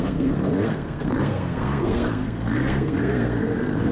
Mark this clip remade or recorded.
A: remade